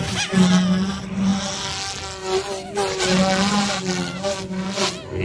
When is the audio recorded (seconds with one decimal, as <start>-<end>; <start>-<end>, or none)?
0.0-5.2